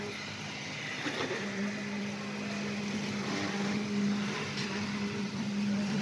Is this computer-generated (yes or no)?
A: no